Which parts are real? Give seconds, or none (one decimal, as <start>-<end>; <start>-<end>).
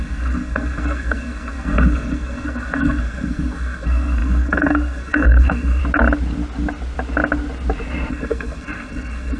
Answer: 5.8-8.1